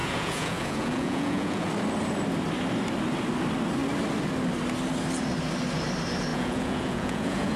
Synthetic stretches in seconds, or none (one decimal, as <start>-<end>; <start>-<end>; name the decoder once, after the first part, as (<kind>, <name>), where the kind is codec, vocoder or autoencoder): 0.0-1.7 (vocoder, Vocos); 6.3-7.6